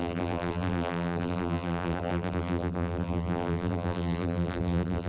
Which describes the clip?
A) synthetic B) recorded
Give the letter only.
A